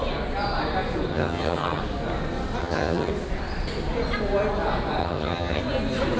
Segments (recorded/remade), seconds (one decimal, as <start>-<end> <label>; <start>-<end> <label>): 0.0-1.1 recorded; 1.1-1.8 remade; 1.8-2.6 recorded; 2.6-3.1 remade; 3.1-5.0 recorded; 5.0-5.6 remade; 5.6-6.2 recorded